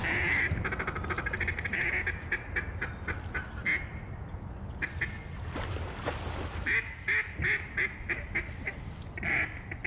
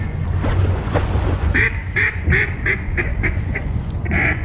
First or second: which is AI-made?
second